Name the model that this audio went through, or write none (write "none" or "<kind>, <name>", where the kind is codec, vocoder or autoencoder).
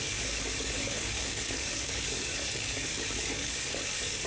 codec, DAC